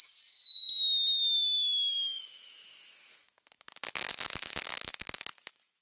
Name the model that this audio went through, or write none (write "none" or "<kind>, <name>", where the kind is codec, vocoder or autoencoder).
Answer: autoencoder, DAC-VAE